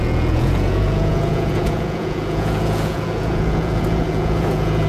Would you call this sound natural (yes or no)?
no